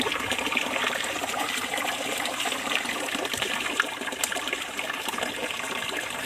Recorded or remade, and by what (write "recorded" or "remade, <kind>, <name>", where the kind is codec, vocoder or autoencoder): remade, vocoder, BigVGAN v2